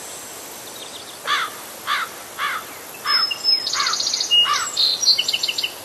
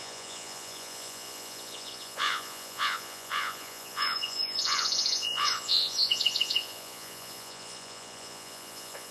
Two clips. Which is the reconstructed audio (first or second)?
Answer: second